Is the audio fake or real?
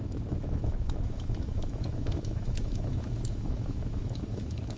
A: fake